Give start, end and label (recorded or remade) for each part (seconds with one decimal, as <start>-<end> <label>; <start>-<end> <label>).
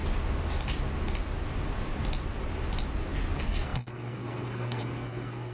0.0-3.3 recorded; 3.3-5.5 remade